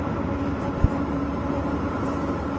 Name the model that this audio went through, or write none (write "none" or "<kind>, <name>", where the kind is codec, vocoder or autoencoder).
none